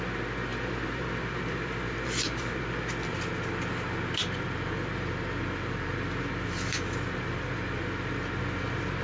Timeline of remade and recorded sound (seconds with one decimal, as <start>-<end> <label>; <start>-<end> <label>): 0.0-0.5 recorded; 0.5-2.8 remade; 2.8-4.2 recorded; 4.2-8.4 remade; 8.4-9.0 recorded